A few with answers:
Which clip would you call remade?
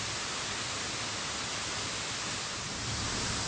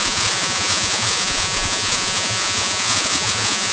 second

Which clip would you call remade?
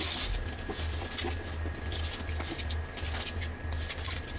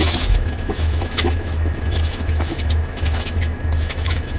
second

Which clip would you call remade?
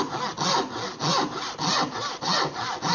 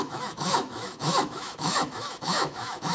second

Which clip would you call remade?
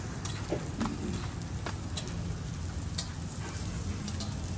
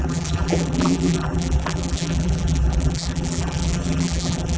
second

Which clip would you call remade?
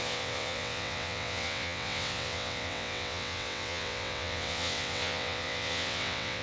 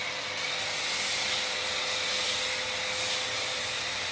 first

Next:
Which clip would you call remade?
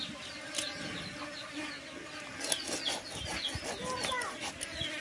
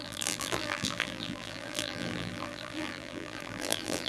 second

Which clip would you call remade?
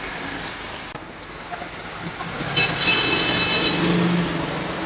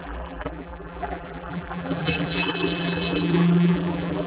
second